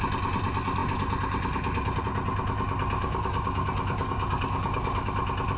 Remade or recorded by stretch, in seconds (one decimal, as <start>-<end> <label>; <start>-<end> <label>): 0.0-3.0 recorded; 3.0-5.1 remade; 5.1-5.6 recorded